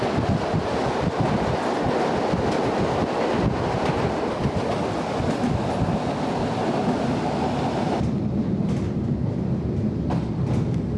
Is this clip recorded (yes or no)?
yes